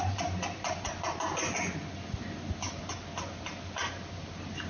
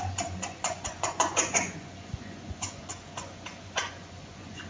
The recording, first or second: first